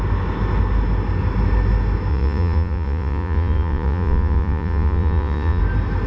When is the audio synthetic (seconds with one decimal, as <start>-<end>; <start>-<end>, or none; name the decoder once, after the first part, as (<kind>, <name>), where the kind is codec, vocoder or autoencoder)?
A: 2.1-5.6 (vocoder, Vocos)